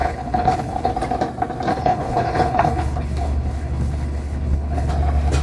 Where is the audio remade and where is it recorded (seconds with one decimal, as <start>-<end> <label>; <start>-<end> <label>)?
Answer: 0.0-0.9 remade; 0.9-1.7 recorded; 1.7-4.9 remade; 4.9-5.4 recorded